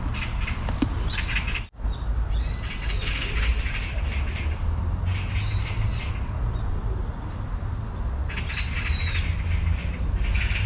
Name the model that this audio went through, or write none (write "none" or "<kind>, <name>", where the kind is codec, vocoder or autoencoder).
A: none